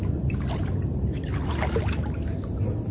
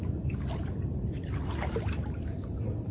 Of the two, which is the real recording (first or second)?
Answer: first